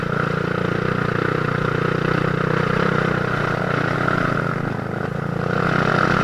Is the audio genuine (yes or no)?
yes